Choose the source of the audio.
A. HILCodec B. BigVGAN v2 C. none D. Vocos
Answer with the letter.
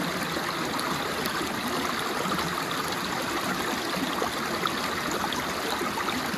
C